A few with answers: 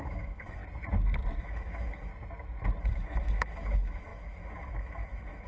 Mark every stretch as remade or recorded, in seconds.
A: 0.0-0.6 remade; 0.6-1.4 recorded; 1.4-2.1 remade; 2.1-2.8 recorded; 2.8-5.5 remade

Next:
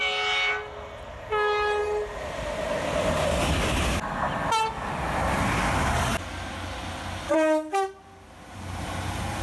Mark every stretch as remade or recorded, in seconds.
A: 0.0-9.4 recorded

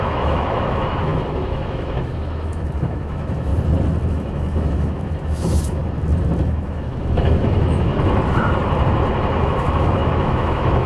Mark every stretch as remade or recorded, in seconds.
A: 0.0-3.5 remade; 3.5-4.1 recorded; 4.1-5.8 remade; 5.8-6.4 recorded; 6.4-7.9 remade; 7.9-9.4 recorded; 9.4-10.9 remade

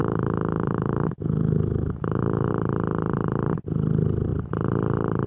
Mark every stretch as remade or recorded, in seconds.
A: 0.0-2.5 remade; 2.5-5.3 recorded

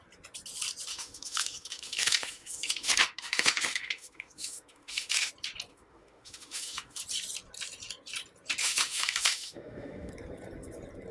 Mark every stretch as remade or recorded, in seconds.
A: 0.0-0.9 recorded; 0.9-5.3 remade; 5.3-5.7 recorded; 5.7-7.0 remade; 7.0-8.6 recorded; 8.6-10.1 remade; 10.1-11.1 recorded

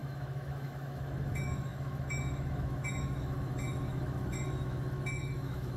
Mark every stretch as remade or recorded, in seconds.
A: 0.0-5.8 remade

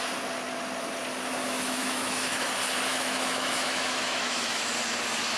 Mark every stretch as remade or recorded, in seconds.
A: 0.0-1.4 recorded; 1.4-2.5 remade; 2.5-2.9 recorded; 2.9-4.6 remade; 4.6-5.4 recorded

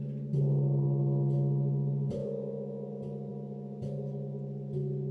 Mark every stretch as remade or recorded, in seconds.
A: 0.0-2.2 recorded; 2.2-2.9 remade; 2.9-5.1 recorded